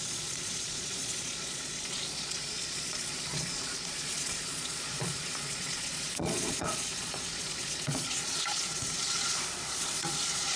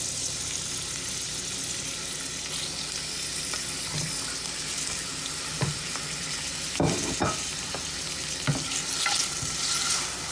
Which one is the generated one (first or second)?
first